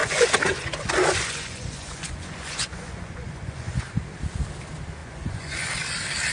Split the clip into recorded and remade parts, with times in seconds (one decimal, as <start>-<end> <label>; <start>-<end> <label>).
0.0-3.8 remade; 3.8-5.0 recorded; 5.0-5.7 remade; 5.7-6.3 recorded